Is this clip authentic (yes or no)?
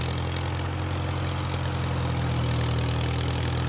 yes